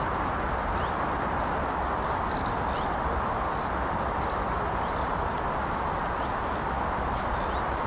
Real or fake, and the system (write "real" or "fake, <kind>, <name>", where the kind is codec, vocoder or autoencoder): real